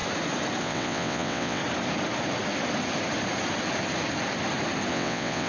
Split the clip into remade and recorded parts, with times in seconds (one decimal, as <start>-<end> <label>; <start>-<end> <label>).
0.0-0.6 recorded; 0.6-1.6 remade; 1.6-4.9 recorded; 4.9-5.5 remade